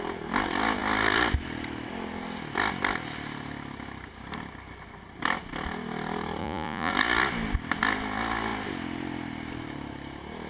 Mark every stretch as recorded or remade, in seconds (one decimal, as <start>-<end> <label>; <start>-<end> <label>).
0.0-6.4 recorded; 6.4-6.9 remade; 6.9-10.5 recorded